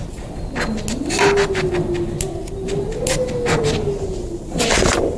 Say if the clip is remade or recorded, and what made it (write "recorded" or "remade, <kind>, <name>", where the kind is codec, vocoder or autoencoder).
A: recorded